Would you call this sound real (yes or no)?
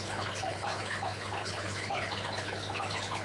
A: no